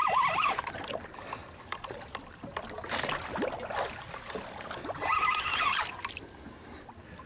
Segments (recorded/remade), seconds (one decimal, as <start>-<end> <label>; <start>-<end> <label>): 0.0-7.3 recorded